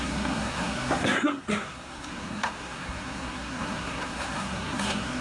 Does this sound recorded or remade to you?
remade